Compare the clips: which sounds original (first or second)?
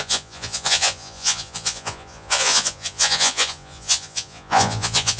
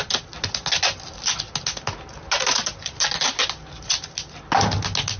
second